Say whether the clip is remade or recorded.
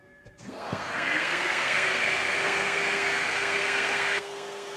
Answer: remade